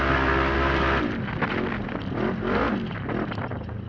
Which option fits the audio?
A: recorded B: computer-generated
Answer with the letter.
A